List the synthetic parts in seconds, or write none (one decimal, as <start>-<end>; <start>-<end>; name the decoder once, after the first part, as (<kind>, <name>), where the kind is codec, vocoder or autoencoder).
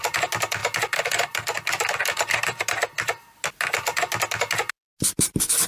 none